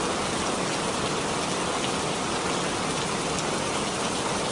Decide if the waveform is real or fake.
real